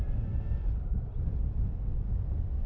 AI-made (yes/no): no